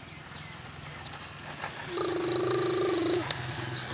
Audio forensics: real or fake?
real